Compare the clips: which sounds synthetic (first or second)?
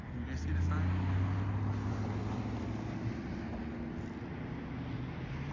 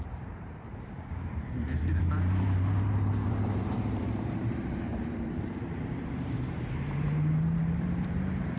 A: second